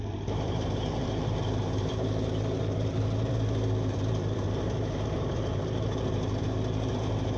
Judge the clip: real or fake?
fake